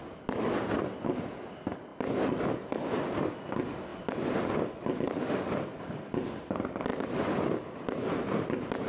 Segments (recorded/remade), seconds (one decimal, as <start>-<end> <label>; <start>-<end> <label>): 0.0-8.9 recorded